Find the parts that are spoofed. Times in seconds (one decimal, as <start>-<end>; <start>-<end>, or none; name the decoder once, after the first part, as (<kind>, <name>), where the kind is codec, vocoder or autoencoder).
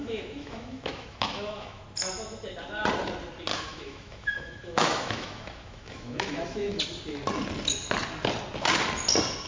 0.0-1.8 (autoencoder, DAC-VAE); 3.5-6.8